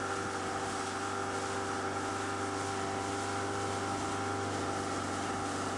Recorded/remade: recorded